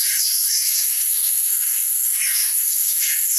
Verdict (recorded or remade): remade